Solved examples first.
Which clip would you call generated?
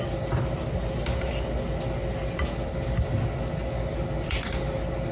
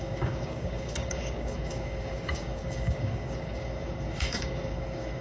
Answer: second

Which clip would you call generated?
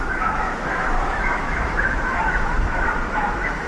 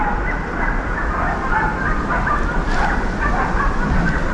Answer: first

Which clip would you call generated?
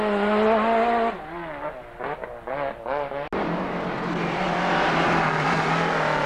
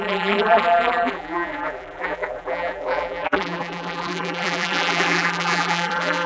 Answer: second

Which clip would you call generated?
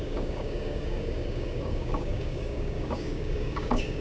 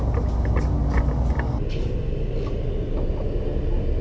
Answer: first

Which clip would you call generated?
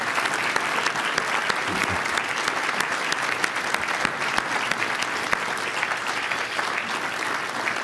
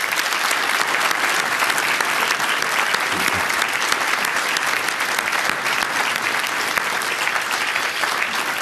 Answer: second